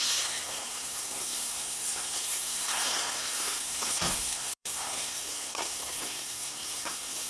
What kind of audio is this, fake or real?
fake